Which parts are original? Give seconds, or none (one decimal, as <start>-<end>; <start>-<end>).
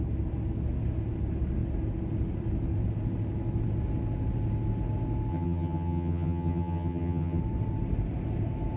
0.0-5.3; 7.4-8.8